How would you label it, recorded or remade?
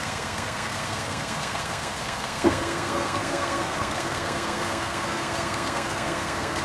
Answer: remade